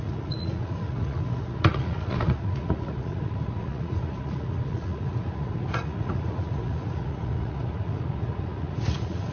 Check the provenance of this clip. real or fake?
fake